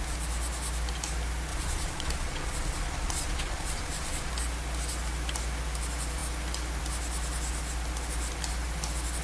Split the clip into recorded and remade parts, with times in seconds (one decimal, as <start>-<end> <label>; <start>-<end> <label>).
0.0-1.5 recorded; 1.5-4.3 remade; 4.3-9.2 recorded